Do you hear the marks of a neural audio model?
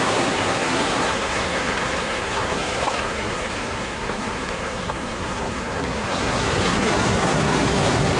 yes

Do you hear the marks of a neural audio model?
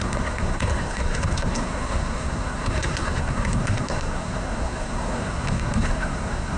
yes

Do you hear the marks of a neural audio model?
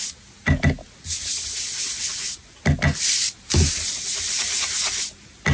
no